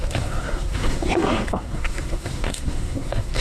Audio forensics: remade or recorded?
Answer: remade